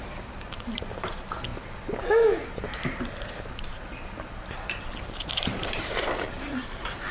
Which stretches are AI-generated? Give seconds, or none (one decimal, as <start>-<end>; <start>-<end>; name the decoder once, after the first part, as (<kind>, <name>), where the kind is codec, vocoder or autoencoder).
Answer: 0.0-7.1 (vocoder, BigVGAN v2)